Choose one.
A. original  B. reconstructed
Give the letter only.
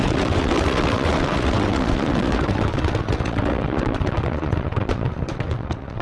B